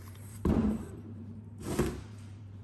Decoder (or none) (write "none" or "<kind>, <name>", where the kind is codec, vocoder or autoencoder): vocoder, BigVGAN v2